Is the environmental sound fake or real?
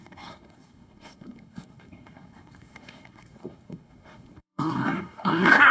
fake